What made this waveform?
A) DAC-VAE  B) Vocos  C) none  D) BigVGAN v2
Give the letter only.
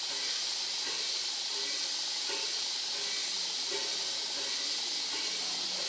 C